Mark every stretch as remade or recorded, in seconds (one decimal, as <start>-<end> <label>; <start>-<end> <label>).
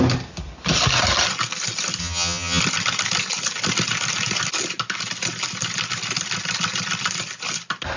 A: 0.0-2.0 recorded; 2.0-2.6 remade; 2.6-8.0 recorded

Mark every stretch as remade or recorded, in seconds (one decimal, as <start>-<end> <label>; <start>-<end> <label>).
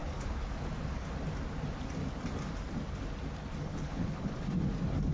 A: 0.0-0.5 remade; 0.5-3.7 recorded; 3.7-4.3 remade; 4.3-5.1 recorded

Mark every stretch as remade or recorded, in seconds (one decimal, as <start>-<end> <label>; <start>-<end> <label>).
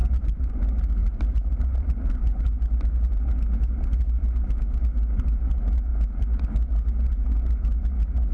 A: 0.0-0.5 remade; 0.5-1.0 recorded; 1.0-3.1 remade; 3.1-8.3 recorded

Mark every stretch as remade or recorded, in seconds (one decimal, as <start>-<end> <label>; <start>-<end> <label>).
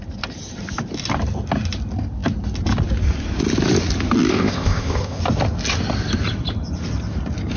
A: 0.0-4.3 recorded; 4.3-5.2 remade; 5.2-7.6 recorded